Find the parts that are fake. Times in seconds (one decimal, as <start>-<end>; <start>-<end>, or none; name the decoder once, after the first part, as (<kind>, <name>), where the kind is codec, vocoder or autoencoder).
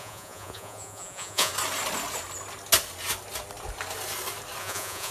0.0-1.5 (vocoder, Vocos); 4.6-5.1